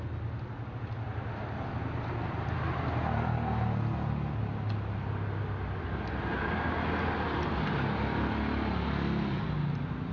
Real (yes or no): yes